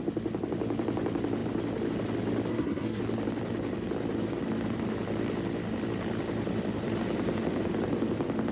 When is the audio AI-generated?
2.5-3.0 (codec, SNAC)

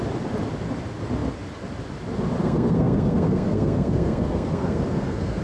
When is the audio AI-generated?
2.4-5.4 (codec, SNAC)

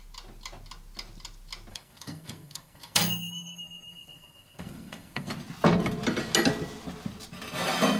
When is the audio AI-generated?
1.7-5.3 (codec, SNAC)

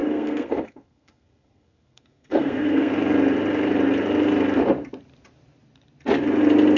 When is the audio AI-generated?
0.0-2.9 (codec, SNAC)

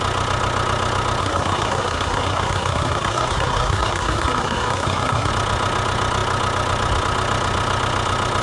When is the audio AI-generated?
1.2-5.3 (codec, SNAC)

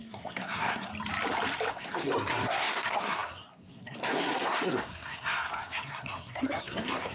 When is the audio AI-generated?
0.0-0.9 (codec, SNAC); 1.7-7.1

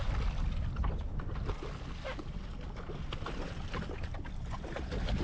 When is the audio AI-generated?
none

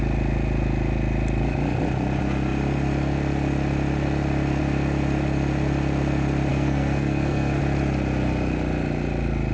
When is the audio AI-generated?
6.5-7.6 (codec, SNAC)